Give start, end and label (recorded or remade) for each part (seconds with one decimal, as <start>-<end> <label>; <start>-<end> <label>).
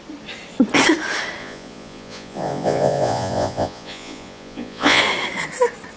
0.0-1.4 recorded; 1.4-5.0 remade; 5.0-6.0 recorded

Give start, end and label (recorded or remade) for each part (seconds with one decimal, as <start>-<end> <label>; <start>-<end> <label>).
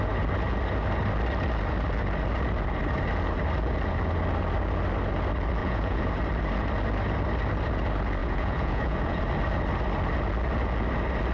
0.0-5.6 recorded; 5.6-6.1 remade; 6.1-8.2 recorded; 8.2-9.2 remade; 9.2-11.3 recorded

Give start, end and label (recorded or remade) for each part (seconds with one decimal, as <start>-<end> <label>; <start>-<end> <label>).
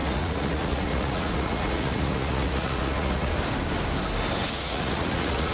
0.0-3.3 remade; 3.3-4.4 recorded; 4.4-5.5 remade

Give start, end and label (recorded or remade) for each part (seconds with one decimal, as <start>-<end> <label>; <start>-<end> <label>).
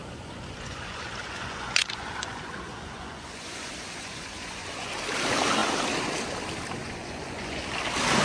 0.0-4.9 remade; 4.9-6.8 recorded; 6.8-7.6 remade; 7.6-8.2 recorded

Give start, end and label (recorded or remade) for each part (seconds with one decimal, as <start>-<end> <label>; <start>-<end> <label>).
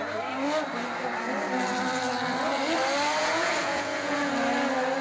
0.0-3.2 recorded; 3.2-4.3 remade; 4.3-5.0 recorded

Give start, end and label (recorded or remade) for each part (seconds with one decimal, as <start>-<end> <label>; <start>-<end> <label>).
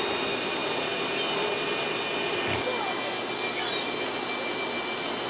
0.0-5.3 recorded